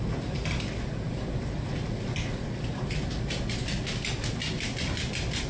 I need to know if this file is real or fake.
real